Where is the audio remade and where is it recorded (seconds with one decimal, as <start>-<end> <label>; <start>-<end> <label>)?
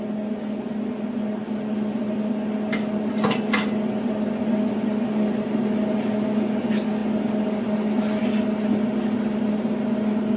0.0-10.4 recorded